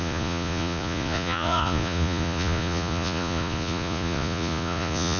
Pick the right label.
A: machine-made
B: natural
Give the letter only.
A